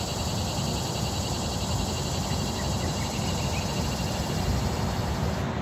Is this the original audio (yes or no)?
yes